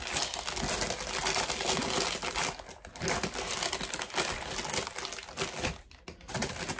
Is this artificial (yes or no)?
no